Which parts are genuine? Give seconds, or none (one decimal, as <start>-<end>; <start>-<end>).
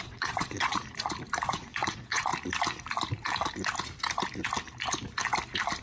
0.8-1.5; 2.3-5.8